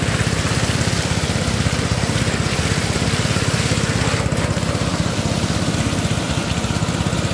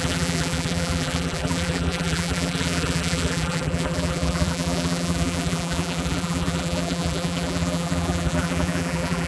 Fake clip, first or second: second